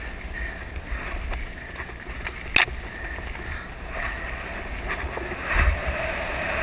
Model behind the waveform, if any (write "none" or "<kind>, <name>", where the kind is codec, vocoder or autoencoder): none